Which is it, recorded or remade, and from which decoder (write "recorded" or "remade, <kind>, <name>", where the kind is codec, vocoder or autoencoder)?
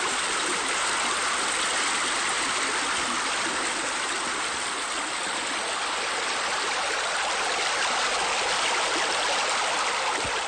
recorded